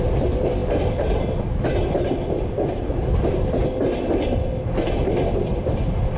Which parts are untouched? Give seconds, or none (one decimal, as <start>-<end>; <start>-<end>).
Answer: 0.0-6.2